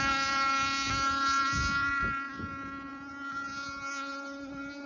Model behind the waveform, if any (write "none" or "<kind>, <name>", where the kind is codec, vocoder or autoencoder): none